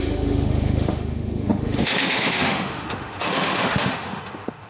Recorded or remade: remade